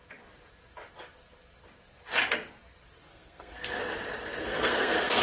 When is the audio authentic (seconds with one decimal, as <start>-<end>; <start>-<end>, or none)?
0.0-3.1; 3.8-4.4